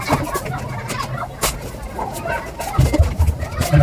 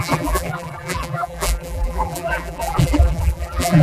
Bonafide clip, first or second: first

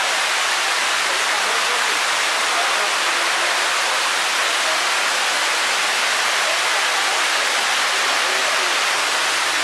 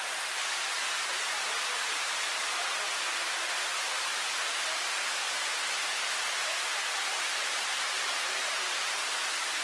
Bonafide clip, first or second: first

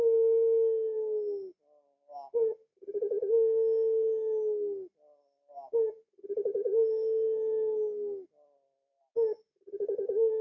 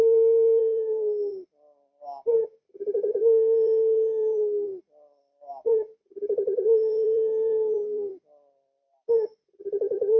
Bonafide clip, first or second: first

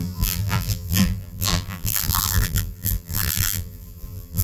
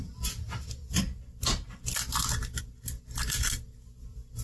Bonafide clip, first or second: second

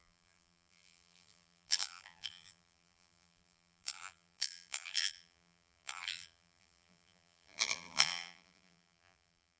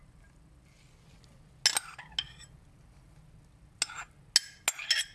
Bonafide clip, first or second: second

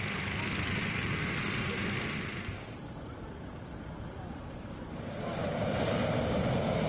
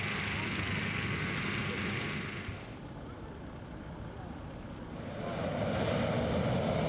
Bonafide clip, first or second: second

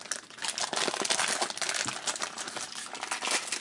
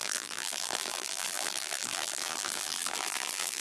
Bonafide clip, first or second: first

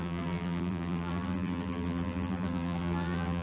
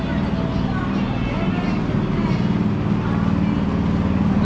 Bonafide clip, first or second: second